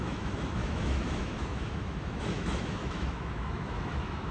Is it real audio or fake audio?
fake